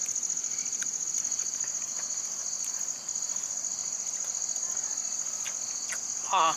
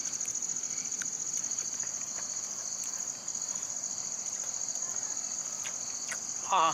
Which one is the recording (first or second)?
first